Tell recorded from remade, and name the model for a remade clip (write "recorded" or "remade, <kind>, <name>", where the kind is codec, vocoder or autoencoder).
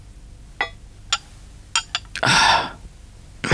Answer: recorded